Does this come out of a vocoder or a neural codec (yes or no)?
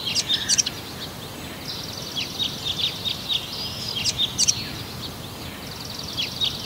no